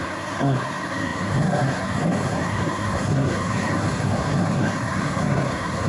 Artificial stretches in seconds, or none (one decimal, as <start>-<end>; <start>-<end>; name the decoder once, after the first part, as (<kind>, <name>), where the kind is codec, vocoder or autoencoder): 0.0-5.9 (codec, SNAC)